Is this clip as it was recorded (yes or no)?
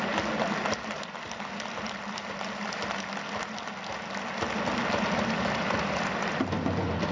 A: yes